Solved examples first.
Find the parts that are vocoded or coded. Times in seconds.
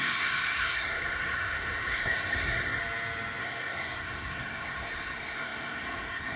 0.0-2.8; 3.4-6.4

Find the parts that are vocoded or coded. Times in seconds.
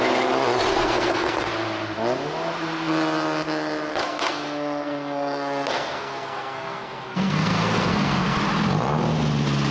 0.7-1.5; 3.9-8.4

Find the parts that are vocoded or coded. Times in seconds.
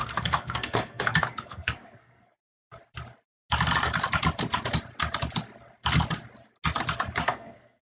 0.0-2.4; 7.2-8.0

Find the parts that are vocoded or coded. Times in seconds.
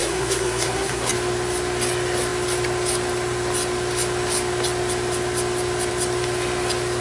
0.0-1.1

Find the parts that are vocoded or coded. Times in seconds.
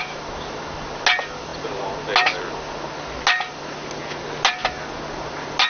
none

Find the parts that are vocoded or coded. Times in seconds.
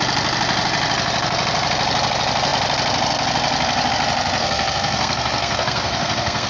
4.4-6.5